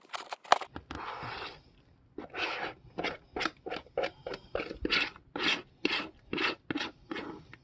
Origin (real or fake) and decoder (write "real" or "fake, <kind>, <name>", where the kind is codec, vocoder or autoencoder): real